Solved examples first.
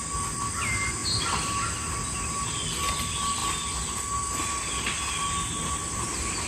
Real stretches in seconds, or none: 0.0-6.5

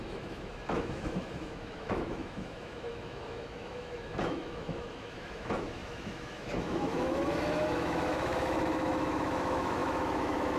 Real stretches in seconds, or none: none

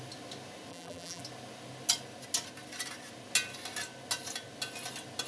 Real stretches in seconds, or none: 0.0-0.7; 1.2-5.3